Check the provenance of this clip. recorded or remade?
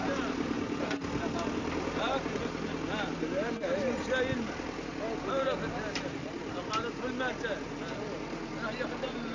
recorded